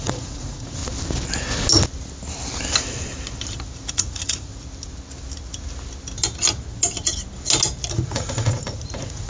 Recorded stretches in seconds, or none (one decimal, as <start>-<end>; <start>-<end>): 0.8-3.9; 4.5-7.9